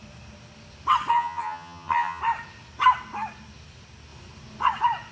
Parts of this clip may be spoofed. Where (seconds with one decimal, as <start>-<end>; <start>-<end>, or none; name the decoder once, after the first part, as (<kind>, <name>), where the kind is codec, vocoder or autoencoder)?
1.1-2.2 (vocoder, HiFi-GAN)